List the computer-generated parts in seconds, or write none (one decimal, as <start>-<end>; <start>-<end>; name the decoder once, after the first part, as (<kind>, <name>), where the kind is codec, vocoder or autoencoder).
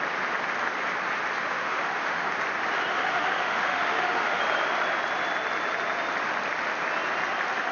1.4-2.3 (autoencoder, DAC-VAE); 2.9-4.4